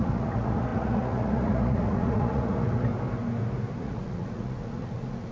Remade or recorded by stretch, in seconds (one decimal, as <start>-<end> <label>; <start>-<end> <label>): 0.0-2.9 remade; 2.9-3.8 recorded; 3.8-5.3 remade